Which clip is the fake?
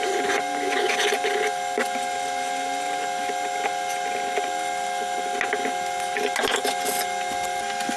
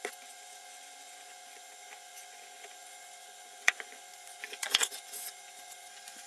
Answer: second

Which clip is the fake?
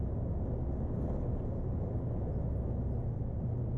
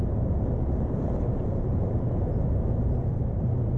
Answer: second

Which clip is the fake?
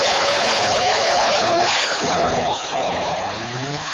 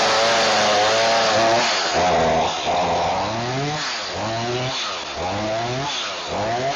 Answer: first